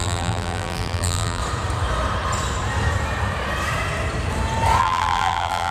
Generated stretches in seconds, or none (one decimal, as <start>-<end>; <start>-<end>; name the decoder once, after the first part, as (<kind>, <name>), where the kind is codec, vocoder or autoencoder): 0.0-1.4 (vocoder, BigVGAN v2); 4.8-5.7